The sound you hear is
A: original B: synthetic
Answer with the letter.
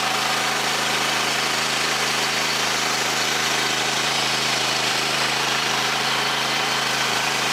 B